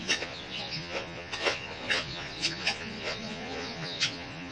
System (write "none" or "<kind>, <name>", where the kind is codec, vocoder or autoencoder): vocoder, Vocos